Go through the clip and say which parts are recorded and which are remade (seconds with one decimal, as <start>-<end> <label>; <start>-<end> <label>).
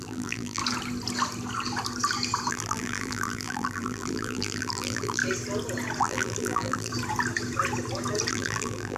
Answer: 0.0-0.6 remade; 0.6-2.5 recorded; 2.5-5.2 remade; 5.2-6.0 recorded; 6.0-6.9 remade; 6.9-8.3 recorded; 8.3-9.0 remade